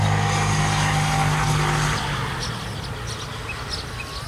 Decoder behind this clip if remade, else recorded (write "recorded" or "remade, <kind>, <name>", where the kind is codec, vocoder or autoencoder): recorded